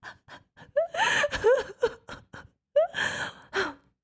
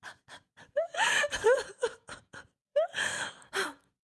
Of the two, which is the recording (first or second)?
first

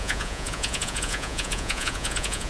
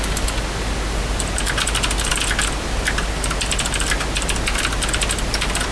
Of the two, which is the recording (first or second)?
second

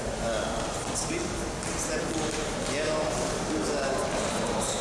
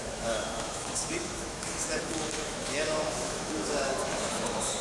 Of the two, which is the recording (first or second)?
first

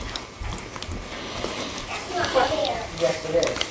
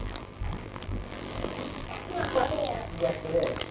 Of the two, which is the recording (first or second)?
first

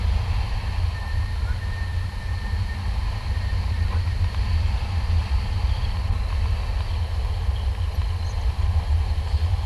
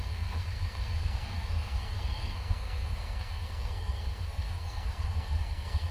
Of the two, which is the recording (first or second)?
first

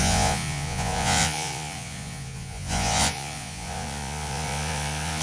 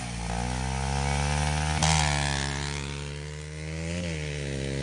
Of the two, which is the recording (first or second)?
second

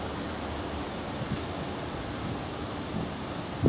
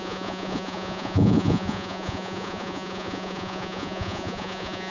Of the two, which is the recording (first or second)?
first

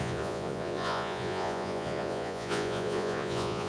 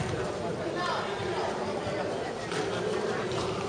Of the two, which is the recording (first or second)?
second